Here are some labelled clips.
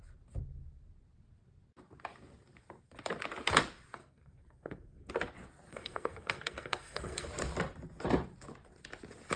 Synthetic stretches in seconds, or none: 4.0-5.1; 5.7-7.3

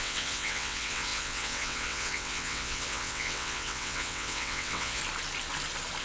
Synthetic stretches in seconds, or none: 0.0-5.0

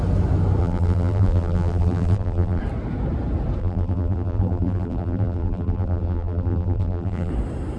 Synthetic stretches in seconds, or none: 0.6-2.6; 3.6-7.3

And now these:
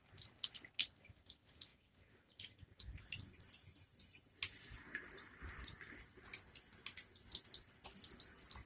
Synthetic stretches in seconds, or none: none